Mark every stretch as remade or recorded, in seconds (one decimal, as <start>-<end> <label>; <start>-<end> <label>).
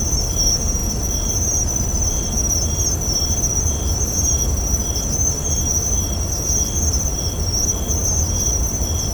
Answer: 0.0-7.1 recorded; 7.1-8.7 remade; 8.7-9.1 recorded